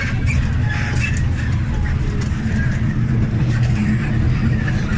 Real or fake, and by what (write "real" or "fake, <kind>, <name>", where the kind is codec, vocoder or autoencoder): real